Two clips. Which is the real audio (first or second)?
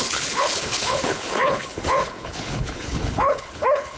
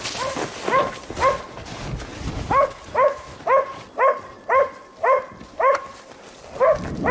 second